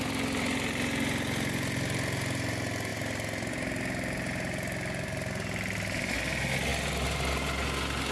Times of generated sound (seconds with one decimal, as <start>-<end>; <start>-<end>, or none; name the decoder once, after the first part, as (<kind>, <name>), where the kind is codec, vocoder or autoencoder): none

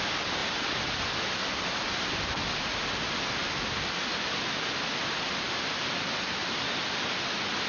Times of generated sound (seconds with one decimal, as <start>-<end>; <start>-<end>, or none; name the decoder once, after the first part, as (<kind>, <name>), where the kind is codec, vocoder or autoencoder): none

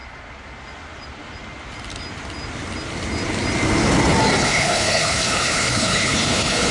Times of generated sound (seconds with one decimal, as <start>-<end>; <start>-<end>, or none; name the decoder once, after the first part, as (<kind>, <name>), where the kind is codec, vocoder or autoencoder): 4.4-6.7 (codec, HILCodec)

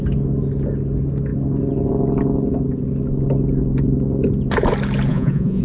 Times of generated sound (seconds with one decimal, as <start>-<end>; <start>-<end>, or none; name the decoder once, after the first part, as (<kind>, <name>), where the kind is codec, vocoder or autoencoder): 5.1-5.6 (vocoder, Vocos)

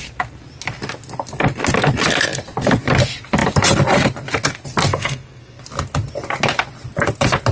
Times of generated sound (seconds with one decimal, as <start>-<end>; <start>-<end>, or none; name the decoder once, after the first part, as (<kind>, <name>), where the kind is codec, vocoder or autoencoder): 4.9-5.6 (codec, SNAC)